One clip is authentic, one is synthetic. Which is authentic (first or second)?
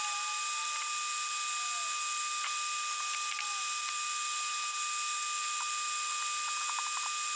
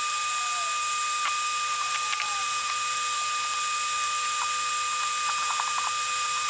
first